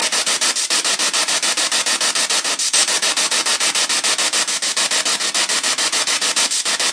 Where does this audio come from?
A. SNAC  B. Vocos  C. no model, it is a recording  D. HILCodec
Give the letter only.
C